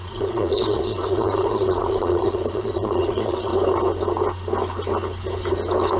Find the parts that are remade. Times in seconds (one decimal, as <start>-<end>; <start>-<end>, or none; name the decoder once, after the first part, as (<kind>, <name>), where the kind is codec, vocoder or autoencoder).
0.0-3.5 (vocoder, Vocos)